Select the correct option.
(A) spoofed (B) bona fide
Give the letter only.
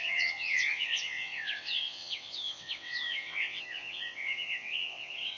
A